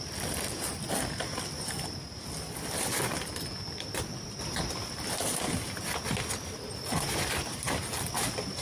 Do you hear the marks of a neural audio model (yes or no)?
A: no